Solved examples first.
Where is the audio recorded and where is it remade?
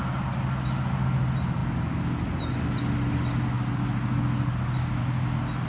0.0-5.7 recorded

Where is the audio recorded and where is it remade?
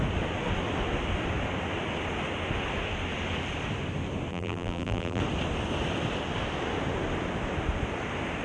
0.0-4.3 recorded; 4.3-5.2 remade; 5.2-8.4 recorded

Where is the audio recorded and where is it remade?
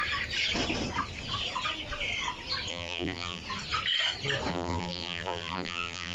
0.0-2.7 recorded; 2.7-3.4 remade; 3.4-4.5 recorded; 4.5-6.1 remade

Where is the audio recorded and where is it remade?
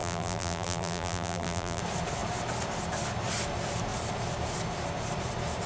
0.0-1.8 remade; 1.8-5.7 recorded